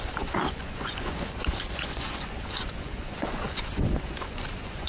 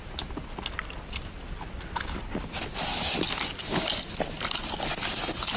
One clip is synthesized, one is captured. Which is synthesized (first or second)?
first